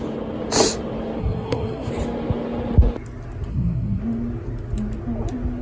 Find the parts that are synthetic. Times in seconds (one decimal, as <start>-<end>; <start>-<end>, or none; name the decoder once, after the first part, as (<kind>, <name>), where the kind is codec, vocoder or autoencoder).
1.2-1.9 (codec, SNAC); 3.5-4.0